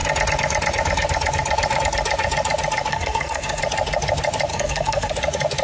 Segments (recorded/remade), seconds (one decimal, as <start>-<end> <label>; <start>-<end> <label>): 0.0-2.9 recorded; 2.9-3.6 remade; 3.6-4.5 recorded; 4.5-5.1 remade; 5.1-5.6 recorded